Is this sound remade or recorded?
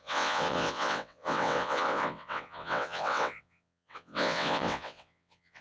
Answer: remade